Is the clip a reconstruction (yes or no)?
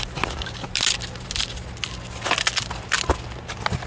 no